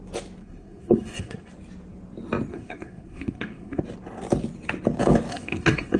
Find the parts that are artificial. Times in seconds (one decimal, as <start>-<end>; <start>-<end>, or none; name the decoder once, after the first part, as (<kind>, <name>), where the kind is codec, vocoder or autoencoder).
0.4-1.5 (codec, SNAC); 2.5-3.8; 5.3-6.0